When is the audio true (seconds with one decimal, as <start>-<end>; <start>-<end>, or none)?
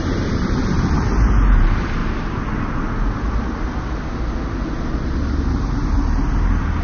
2.0-5.5